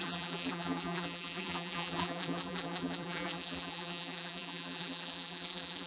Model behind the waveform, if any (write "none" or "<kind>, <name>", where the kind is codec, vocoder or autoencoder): vocoder, BigVGAN v2